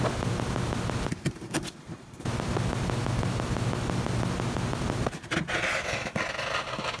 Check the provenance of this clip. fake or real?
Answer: real